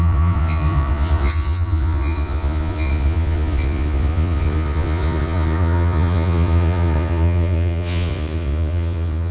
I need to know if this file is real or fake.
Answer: fake